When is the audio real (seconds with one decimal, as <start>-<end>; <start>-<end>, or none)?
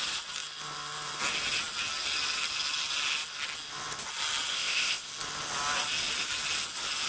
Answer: 0.0-4.5; 5.1-7.1